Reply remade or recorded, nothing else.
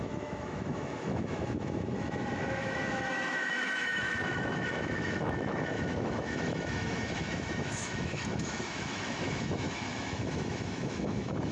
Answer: remade